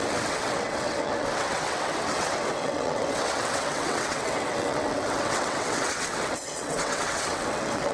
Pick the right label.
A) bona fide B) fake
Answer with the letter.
B